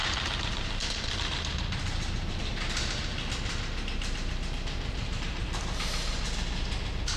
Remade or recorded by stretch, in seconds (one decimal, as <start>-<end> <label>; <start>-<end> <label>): 0.0-2.5 remade; 2.5-7.2 recorded